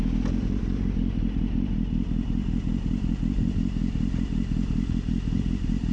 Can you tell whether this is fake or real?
real